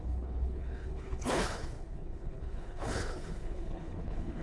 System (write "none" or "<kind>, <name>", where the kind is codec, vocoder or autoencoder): codec, HILCodec